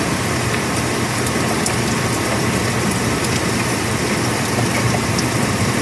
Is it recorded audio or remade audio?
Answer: remade